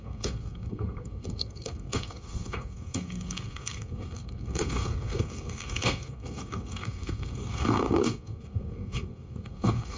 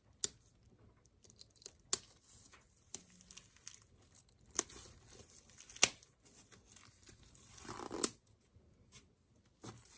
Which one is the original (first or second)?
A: second